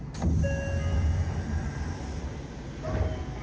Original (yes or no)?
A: yes